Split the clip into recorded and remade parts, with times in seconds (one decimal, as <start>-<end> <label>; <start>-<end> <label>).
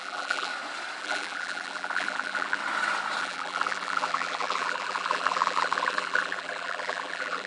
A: 0.0-0.5 remade; 0.5-1.0 recorded; 1.0-2.6 remade; 2.6-3.2 recorded; 3.2-7.5 remade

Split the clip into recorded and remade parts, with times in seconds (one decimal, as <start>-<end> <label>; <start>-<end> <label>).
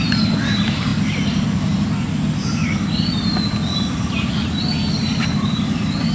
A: 0.0-6.1 recorded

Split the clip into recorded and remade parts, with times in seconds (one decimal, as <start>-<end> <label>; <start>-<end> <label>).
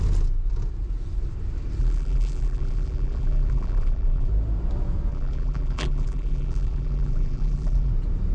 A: 0.0-1.8 recorded; 1.8-4.3 remade; 4.3-5.1 recorded; 5.1-7.9 remade; 7.9-8.3 recorded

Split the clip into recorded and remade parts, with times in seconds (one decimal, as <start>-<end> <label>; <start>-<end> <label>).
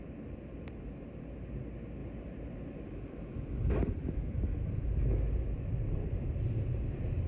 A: 0.0-7.3 recorded